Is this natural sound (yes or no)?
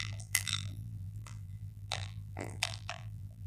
no